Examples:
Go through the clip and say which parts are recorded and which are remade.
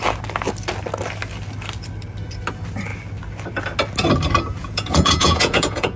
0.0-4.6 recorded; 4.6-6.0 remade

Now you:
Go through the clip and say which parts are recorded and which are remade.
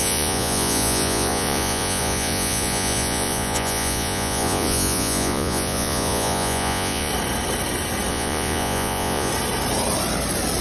0.0-7.1 remade; 7.1-8.1 recorded; 8.1-9.3 remade; 9.3-10.6 recorded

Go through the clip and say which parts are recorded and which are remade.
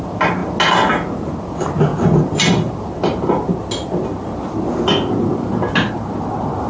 0.0-6.7 recorded